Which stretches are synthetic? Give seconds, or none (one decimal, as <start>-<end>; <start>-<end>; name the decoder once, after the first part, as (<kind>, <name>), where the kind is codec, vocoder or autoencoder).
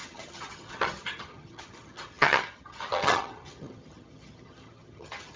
0.0-5.4 (vocoder, HiFi-GAN)